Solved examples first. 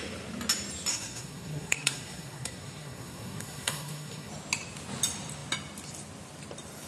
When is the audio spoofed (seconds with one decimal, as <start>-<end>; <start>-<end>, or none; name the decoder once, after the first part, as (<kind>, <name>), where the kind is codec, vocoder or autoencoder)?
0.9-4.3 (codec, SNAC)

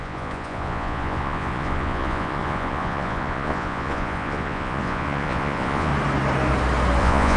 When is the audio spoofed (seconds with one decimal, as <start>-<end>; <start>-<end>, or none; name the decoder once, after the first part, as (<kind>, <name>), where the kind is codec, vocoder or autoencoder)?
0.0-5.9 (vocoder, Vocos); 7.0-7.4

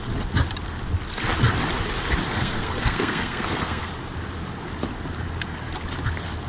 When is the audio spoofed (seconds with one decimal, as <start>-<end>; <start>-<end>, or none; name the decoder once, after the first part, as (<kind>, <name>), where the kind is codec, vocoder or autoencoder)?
2.3-3.9 (codec, SNAC)